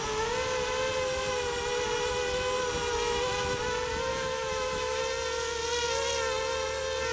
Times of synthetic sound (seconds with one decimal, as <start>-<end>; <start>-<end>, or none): 4.1-5.0